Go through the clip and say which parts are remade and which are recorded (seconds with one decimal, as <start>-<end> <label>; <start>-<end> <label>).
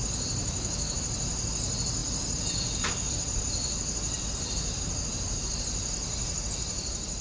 0.0-0.4 recorded; 0.4-1.0 remade; 1.0-7.2 recorded